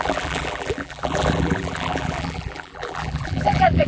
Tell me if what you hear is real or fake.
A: fake